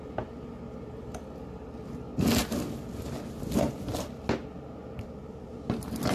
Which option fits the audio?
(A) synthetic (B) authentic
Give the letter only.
B